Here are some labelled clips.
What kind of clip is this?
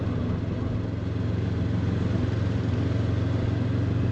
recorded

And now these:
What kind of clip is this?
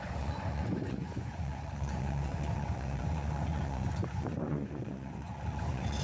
remade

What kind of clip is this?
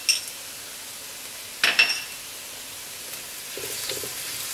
recorded